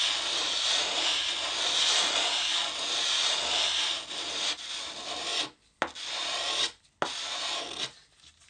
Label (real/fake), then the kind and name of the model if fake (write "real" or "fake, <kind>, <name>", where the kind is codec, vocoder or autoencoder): real